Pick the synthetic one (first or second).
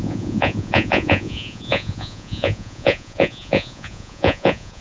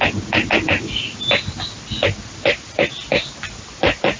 first